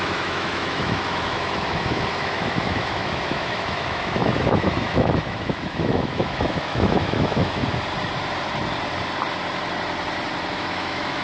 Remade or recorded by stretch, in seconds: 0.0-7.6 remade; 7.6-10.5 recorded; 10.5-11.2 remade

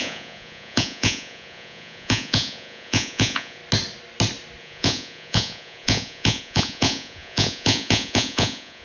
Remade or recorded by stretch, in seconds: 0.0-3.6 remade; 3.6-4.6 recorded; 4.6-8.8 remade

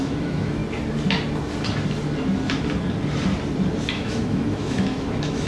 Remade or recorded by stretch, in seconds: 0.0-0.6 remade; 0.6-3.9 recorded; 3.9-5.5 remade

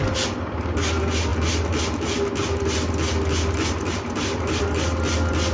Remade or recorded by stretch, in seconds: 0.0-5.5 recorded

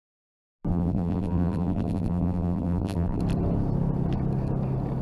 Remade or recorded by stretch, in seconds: 0.0-0.7 recorded; 0.7-3.2 remade; 3.2-5.0 recorded

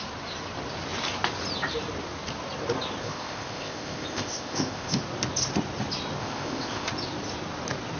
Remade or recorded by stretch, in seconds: 0.0-3.0 recorded; 3.0-5.0 remade; 5.0-6.2 recorded; 6.2-6.9 remade; 6.9-8.0 recorded

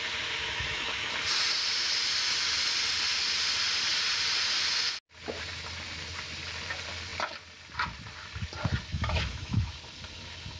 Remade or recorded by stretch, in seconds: 0.0-0.4 recorded; 0.4-1.1 remade; 1.1-8.9 recorded; 8.9-9.7 remade; 9.7-10.6 recorded

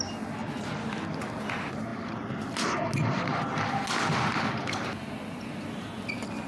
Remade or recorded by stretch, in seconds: 0.0-6.5 recorded